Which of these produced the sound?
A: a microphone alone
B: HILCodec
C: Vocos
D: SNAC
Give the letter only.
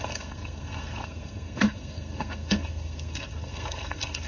D